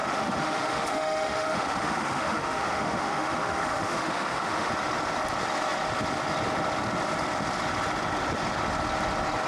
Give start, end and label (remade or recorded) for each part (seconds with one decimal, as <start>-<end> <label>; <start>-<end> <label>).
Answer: 0.0-4.7 remade; 4.7-9.5 recorded